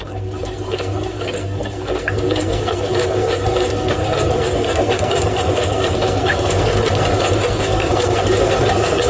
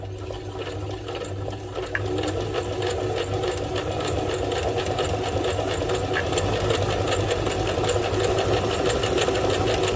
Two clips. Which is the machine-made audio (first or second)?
first